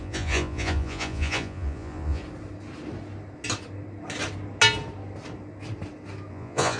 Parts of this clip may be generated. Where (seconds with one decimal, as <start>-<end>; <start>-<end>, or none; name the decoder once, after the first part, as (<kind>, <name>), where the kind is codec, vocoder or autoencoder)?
0.0-2.2 (vocoder, Vocos); 6.3-6.8